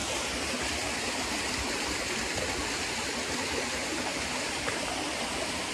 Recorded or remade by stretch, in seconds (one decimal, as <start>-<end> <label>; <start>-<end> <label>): 0.0-4.1 recorded; 4.1-5.0 remade; 5.0-5.7 recorded